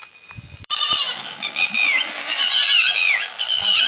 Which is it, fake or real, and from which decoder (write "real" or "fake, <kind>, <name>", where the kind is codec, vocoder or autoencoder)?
fake, vocoder, BigVGAN v2